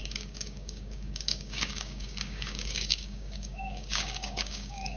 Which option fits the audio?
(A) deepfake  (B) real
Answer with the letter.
A